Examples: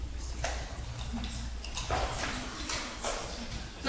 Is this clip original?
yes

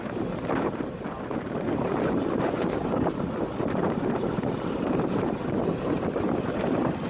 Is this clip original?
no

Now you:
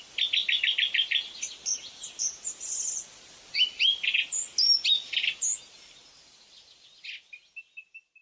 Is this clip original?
yes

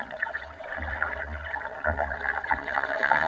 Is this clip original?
no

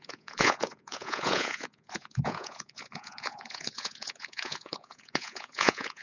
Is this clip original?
no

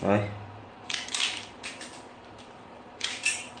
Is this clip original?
no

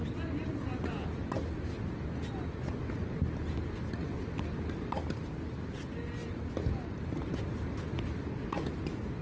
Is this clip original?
yes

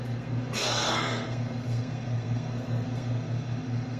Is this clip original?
no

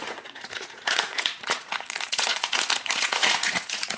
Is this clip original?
no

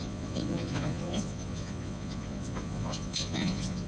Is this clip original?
no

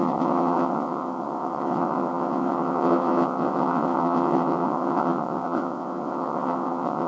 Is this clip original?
no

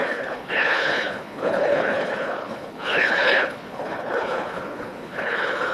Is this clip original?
no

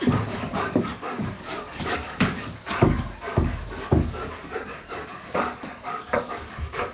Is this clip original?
no